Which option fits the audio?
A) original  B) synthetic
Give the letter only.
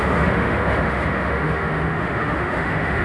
B